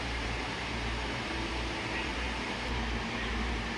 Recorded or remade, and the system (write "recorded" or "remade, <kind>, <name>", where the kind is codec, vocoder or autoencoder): remade, vocoder, BigVGAN v2